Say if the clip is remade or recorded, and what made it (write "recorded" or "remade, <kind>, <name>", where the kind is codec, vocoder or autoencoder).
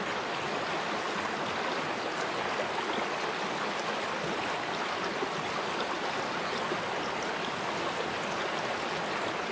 recorded